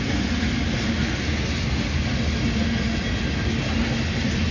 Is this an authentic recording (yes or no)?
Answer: yes